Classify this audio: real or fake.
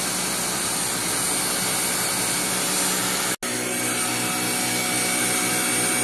real